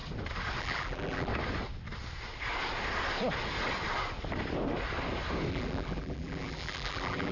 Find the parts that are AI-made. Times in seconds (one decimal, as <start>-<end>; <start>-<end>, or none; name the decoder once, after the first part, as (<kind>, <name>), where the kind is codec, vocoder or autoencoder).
0.6-1.3 (vocoder, BigVGAN v2); 5.5-7.3